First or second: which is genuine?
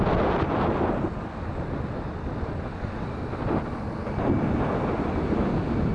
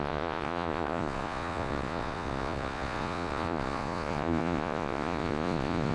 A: first